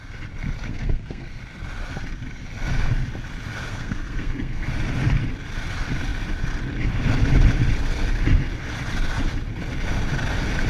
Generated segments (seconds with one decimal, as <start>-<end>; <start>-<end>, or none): 0.7-1.3; 3.7-4.7